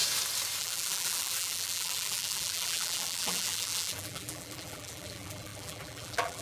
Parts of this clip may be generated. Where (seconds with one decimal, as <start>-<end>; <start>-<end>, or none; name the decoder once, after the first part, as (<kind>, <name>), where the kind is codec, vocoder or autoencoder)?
0.6-6.4 (vocoder, BigVGAN v2)